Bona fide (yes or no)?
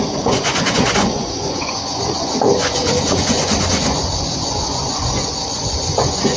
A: no